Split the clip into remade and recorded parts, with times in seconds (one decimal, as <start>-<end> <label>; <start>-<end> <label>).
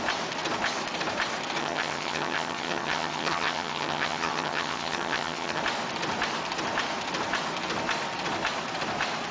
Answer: 0.0-1.6 recorded; 1.6-5.6 remade; 5.6-9.3 recorded